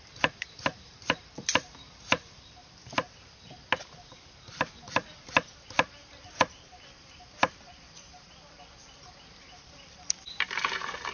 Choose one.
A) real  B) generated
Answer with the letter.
B